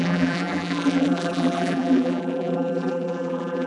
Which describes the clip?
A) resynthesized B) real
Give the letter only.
A